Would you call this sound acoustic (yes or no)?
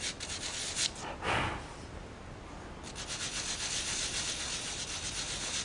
yes